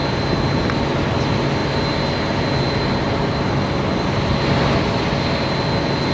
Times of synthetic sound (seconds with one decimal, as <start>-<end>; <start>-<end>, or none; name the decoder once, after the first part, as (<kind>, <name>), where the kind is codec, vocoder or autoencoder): none